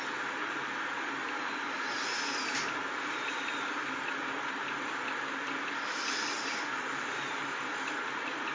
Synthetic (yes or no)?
no